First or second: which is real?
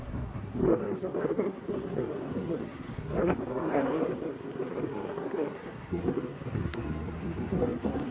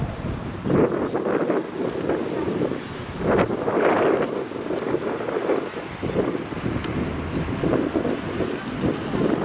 second